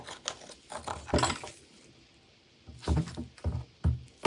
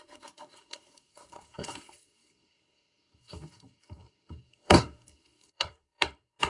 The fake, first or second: second